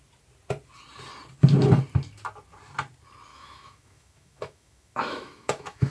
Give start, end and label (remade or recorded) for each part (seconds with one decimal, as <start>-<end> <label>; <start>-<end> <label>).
0.0-3.3 recorded; 3.3-5.9 remade